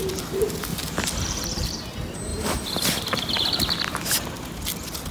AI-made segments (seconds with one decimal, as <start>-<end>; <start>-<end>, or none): 0.7-1.8; 2.3-3.9